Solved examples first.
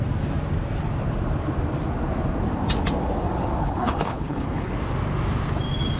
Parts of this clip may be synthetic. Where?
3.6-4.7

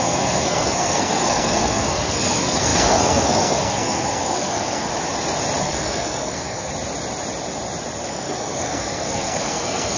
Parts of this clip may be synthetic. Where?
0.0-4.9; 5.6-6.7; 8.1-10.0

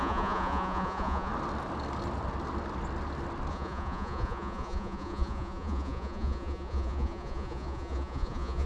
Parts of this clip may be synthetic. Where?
0.0-1.3; 3.5-8.7

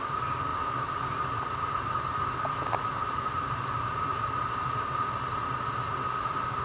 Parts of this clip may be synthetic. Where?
3.0-5.6

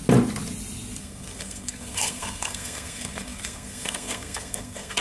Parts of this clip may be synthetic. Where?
1.0-5.0